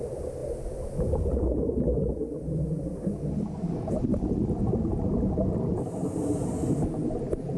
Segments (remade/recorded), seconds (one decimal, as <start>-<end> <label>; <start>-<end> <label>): 0.0-0.4 remade; 0.4-2.1 recorded; 2.1-4.1 remade; 4.1-4.8 recorded; 4.8-7.6 remade